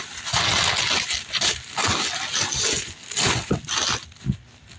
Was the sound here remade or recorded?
recorded